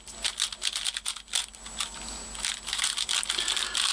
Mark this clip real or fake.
real